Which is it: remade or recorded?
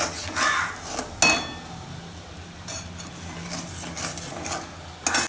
recorded